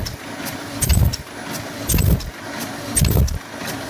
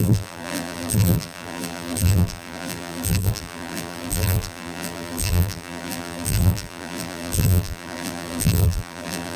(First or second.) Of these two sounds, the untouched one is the first